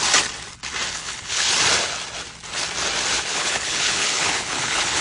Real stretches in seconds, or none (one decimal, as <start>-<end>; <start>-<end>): 0.0-0.9; 1.5-3.3